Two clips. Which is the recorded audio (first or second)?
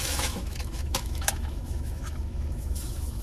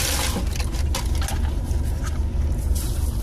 second